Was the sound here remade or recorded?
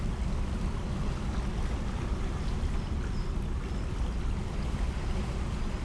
recorded